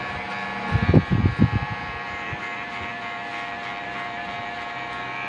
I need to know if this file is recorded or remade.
remade